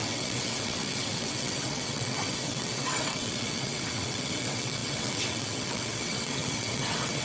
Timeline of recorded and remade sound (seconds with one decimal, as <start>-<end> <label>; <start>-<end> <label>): 0.0-7.2 remade